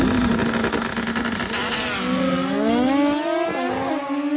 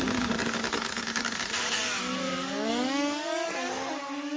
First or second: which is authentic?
first